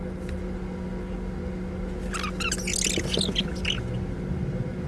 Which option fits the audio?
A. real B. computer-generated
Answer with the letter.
A